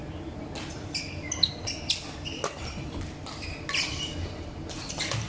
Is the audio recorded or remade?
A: recorded